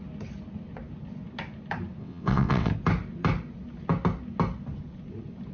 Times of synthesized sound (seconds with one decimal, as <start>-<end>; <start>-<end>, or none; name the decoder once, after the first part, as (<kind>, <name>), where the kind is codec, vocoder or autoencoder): 2.0-2.7 (vocoder, WaveNeXt)